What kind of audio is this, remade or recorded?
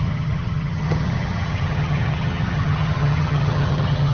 remade